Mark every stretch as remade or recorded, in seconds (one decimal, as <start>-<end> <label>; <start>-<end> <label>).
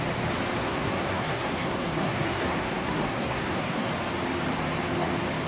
0.0-0.6 recorded; 0.6-3.9 remade; 3.9-5.5 recorded